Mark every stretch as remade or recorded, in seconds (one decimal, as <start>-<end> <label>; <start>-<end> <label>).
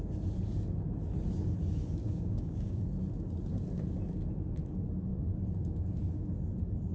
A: 0.0-2.0 recorded; 2.0-2.8 remade; 2.8-6.9 recorded